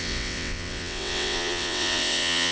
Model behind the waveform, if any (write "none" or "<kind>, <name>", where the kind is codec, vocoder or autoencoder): vocoder, WaveNeXt